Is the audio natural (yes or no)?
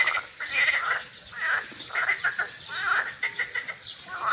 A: yes